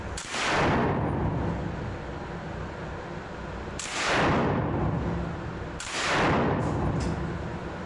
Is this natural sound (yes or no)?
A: yes